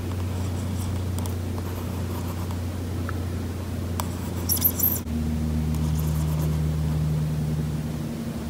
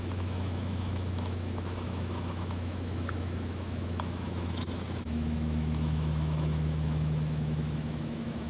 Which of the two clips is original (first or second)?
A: first